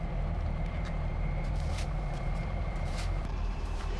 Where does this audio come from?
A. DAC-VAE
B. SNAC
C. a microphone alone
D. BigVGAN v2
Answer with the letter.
D